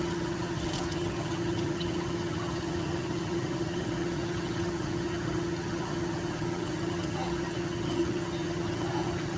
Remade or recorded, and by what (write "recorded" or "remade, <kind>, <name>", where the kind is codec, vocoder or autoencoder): remade, vocoder, HiFi-GAN